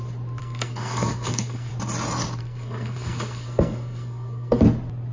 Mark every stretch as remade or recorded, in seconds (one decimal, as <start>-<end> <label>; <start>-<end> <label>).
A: 0.0-0.4 recorded; 0.4-1.7 remade; 1.7-2.4 recorded; 2.4-4.6 remade; 4.6-5.1 recorded